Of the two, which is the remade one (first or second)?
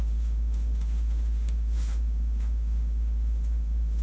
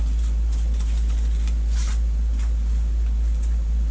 first